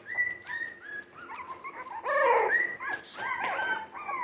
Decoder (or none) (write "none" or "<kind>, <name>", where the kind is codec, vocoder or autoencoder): none